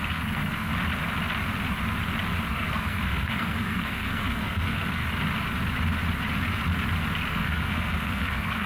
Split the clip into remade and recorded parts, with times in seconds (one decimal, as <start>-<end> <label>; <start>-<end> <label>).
0.0-0.7 remade; 0.7-2.5 recorded; 2.5-5.0 remade; 5.0-7.3 recorded; 7.3-8.7 remade